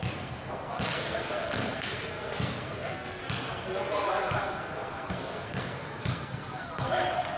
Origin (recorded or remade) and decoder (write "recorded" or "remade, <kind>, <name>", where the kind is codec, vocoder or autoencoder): remade, codec, SNAC